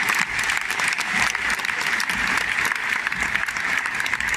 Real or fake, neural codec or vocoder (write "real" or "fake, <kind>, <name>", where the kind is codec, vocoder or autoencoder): fake, vocoder, BigVGAN v2